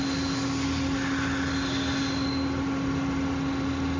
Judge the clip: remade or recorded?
recorded